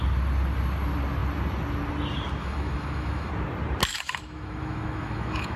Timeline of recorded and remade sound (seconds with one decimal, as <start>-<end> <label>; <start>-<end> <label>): 0.0-2.4 recorded; 2.4-3.3 remade; 3.3-3.9 recorded; 3.9-5.6 remade